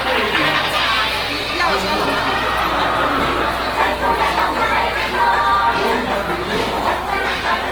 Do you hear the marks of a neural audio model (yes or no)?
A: no